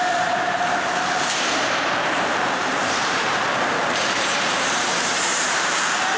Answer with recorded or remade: remade